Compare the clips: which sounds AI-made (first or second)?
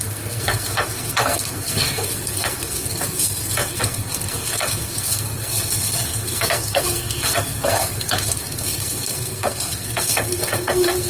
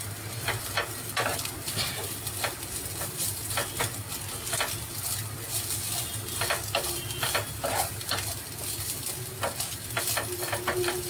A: first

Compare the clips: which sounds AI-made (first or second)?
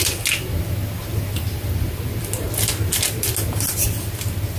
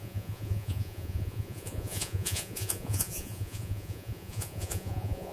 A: second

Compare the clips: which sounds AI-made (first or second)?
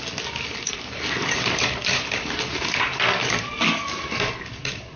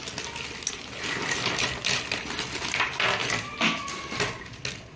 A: first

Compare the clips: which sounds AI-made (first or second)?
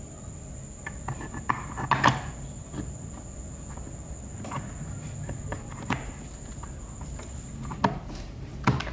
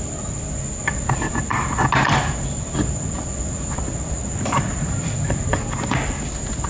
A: second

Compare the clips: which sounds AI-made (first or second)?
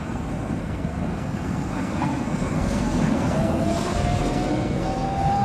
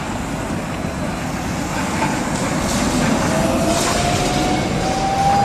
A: first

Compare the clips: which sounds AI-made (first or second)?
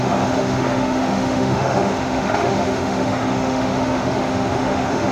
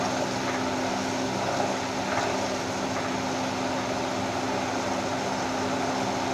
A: first